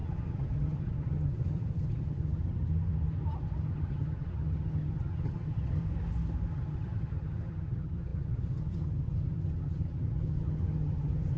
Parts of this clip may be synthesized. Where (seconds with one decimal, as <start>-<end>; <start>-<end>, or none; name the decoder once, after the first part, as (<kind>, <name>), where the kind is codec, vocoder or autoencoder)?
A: 0.0-2.7 (vocoder, HiFi-GAN); 3.6-5.8; 6.5-11.4

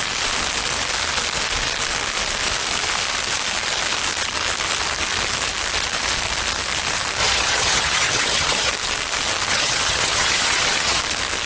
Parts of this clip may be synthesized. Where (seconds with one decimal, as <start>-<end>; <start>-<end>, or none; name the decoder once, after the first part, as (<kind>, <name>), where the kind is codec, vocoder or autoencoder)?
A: 7.2-8.7 (vocoder, HiFi-GAN); 9.5-11.0

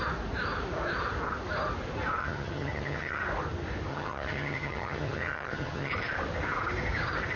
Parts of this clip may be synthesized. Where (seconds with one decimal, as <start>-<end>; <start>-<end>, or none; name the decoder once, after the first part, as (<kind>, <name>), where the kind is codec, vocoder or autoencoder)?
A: 2.2-3.2 (vocoder, HiFi-GAN); 3.9-5.9